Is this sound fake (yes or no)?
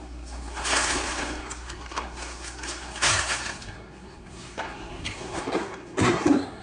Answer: yes